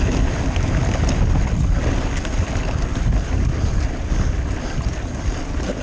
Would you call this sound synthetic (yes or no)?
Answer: no